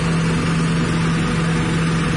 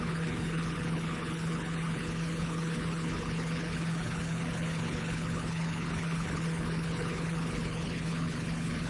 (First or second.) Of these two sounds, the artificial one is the second